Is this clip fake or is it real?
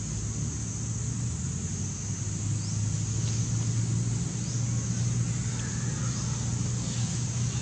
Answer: real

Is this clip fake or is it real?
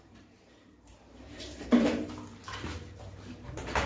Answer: fake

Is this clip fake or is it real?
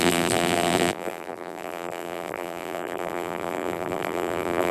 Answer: fake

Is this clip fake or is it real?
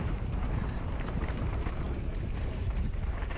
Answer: fake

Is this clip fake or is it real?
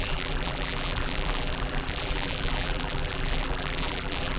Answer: fake